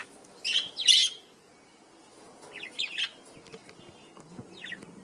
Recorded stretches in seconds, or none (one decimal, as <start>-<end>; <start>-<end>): 0.0-5.0